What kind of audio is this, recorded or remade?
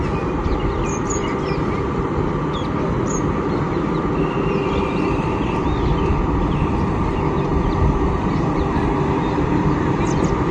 recorded